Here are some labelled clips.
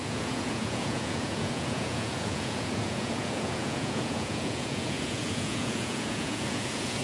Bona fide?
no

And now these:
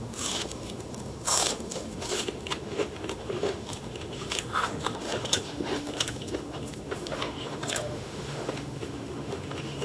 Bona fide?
no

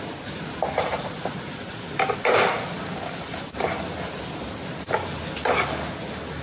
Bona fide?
yes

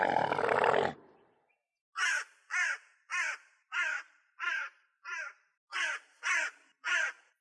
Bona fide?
yes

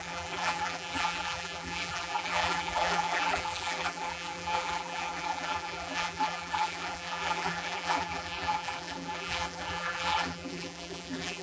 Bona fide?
no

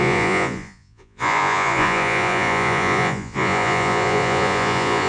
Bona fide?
no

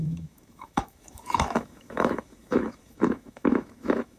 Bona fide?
no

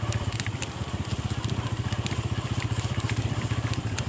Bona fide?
no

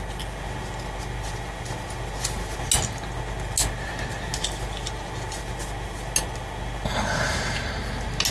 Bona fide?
yes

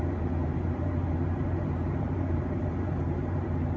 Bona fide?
no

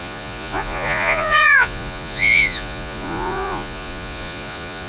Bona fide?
no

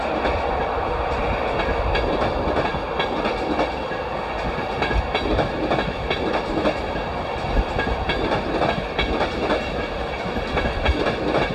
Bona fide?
yes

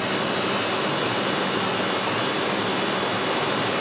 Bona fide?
yes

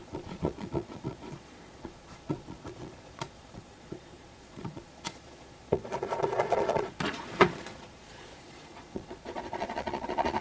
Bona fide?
no